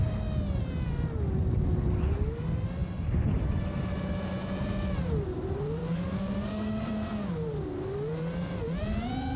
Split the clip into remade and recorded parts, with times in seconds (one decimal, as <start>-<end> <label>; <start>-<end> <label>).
0.0-5.8 recorded; 5.8-6.9 remade; 6.9-9.4 recorded